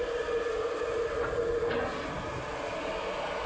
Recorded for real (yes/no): yes